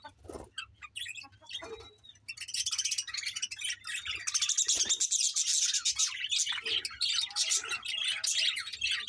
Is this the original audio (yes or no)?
yes